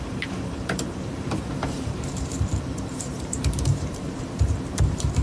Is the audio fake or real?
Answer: fake